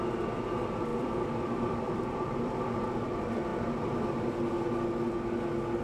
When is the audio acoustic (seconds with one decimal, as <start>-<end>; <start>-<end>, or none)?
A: 0.0-0.9; 2.8-5.8